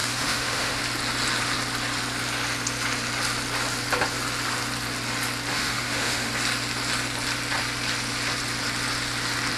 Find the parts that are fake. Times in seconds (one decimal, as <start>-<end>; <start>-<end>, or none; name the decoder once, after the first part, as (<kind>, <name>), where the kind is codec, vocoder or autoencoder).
0.0-0.8 (autoencoder, DAC-VAE); 5.5-6.3